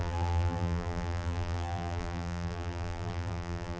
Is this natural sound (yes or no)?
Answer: no